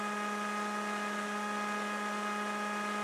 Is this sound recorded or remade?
recorded